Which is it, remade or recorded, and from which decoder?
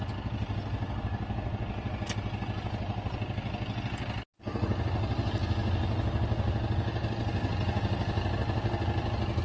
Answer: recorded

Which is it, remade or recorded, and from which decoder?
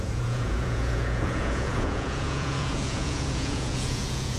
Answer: remade, vocoder, Vocos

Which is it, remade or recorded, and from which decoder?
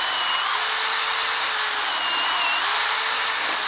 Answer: recorded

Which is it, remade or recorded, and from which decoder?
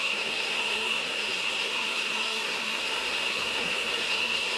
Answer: remade, codec, SNAC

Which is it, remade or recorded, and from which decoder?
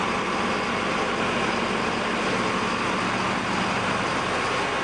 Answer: recorded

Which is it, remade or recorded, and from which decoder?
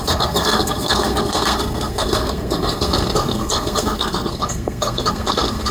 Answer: remade, codec, SNAC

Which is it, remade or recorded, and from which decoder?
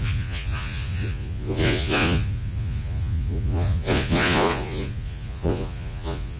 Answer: remade, vocoder, Vocos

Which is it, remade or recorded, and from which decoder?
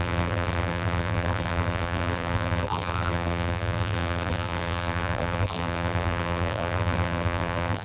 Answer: remade, vocoder, BigVGAN v2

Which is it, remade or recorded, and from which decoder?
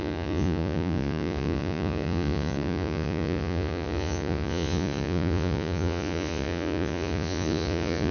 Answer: remade, vocoder, Vocos